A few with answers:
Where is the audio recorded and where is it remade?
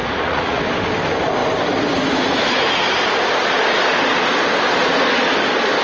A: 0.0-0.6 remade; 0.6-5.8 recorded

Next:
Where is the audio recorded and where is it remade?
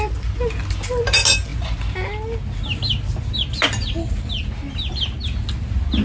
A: 0.0-6.0 recorded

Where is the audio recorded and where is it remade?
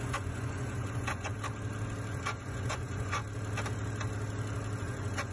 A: 0.0-1.3 remade; 1.3-2.1 recorded; 2.1-3.2 remade; 3.2-4.8 recorded; 4.8-5.3 remade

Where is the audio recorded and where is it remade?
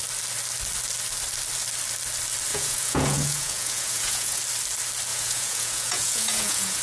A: 0.0-2.5 recorded; 2.5-4.4 remade; 4.4-5.1 recorded; 5.1-6.8 remade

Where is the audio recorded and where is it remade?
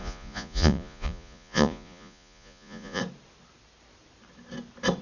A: 0.0-3.0 remade; 3.0-5.0 recorded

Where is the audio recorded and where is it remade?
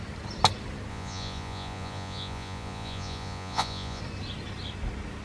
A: 0.0-0.9 recorded; 0.9-4.0 remade; 4.0-5.2 recorded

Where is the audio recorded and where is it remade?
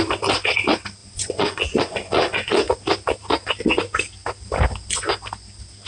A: 0.0-1.0 recorded; 1.0-2.7 remade; 2.7-5.9 recorded